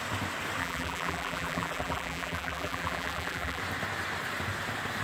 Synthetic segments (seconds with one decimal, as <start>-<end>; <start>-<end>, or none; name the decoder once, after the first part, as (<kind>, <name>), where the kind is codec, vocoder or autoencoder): 0.6-3.6 (vocoder, BigVGAN v2)

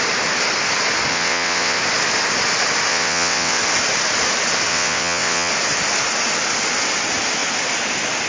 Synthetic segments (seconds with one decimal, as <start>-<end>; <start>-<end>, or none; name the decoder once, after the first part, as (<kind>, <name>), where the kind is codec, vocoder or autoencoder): 1.1-1.8 (vocoder, WaveNeXt); 2.9-3.6; 4.7-5.5

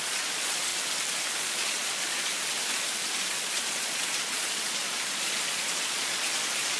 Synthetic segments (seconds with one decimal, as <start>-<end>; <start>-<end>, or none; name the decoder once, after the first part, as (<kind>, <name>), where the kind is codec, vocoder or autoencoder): 0.0-0.7 (vocoder, Vocos); 1.4-2.3; 3.2-6.8

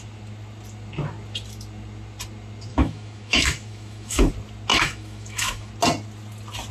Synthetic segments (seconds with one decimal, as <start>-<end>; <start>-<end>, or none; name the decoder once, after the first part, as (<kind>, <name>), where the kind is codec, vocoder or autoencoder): 2.7-4.3 (autoencoder, DAC-VAE); 4.7-5.7

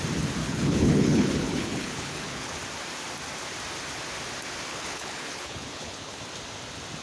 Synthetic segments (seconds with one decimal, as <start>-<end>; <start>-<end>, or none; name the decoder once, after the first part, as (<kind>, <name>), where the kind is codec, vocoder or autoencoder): 0.4-2.6 (codec, HILCodec); 4.7-6.2

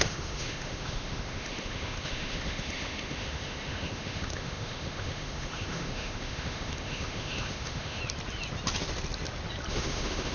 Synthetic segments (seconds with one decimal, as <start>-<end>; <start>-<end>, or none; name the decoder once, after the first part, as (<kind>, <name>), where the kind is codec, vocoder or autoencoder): 0.0-8.0 (autoencoder, DAC-VAE); 9.7-10.3